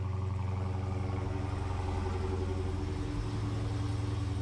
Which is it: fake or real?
real